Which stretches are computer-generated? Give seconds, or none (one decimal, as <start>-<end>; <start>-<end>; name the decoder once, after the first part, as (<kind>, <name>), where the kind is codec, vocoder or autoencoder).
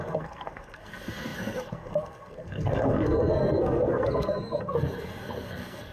0.0-5.9 (codec, SNAC)